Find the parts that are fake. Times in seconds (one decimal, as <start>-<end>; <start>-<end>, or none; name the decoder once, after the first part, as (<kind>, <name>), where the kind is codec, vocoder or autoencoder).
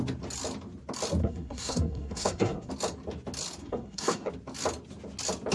1.2-2.7 (codec, SNAC); 3.6-4.3